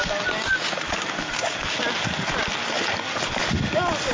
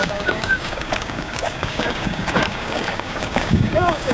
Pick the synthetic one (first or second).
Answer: second